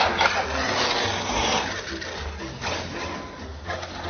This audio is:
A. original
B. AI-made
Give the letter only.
A